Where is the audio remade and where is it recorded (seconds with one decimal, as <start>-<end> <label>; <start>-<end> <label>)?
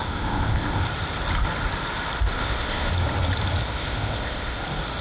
0.0-0.8 remade; 0.8-2.4 recorded; 2.4-2.9 remade; 2.9-3.6 recorded; 3.6-4.6 remade; 4.6-5.0 recorded